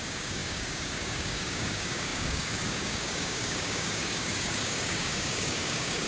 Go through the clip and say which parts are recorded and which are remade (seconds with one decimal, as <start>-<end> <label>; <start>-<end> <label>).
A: 0.0-6.1 remade